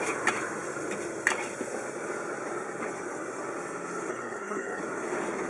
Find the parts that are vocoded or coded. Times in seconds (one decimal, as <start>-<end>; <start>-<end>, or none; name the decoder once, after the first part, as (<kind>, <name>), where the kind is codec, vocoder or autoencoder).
4.1-4.8 (codec, SNAC)